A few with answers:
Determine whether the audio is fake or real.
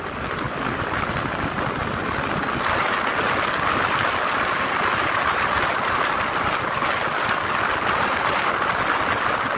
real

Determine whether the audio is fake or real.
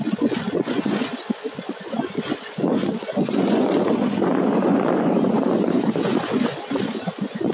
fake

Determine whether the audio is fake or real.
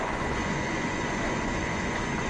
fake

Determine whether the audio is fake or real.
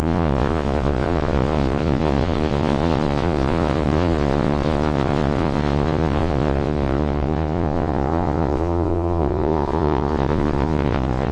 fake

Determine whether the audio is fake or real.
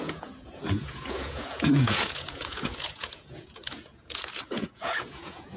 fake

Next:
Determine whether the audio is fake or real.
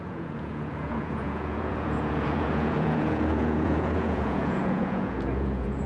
fake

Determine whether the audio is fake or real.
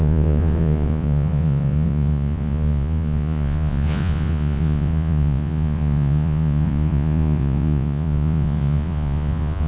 fake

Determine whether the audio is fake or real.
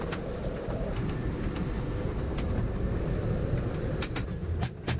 real